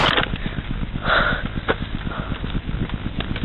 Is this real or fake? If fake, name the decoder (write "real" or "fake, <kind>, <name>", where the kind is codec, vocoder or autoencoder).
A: real